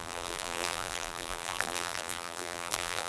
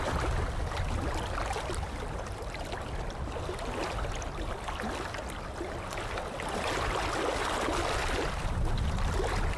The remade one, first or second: first